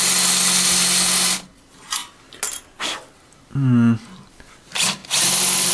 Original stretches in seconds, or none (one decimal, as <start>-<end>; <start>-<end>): 0.0-5.7